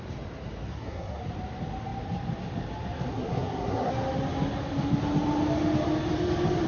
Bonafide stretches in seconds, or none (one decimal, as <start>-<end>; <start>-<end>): 0.0-0.7; 1.2-3.1; 3.9-6.7